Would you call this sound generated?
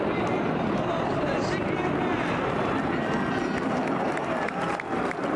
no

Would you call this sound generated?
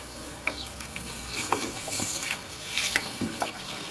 yes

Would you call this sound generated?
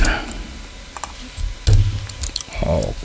no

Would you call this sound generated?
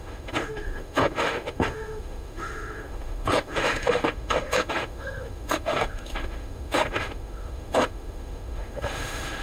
yes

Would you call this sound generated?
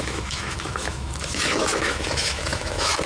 yes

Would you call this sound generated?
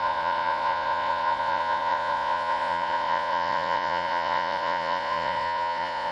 yes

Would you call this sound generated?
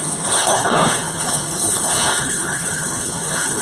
yes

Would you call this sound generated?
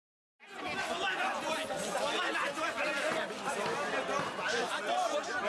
no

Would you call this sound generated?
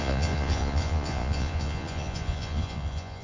yes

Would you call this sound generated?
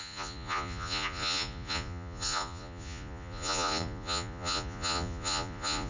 yes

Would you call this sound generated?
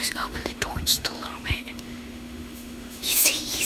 yes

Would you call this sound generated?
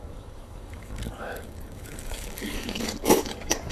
yes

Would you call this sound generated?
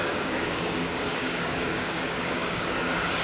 yes